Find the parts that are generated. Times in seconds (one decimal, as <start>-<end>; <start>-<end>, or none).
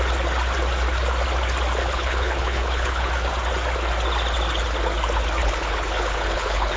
1.8-3.1; 5.4-6.8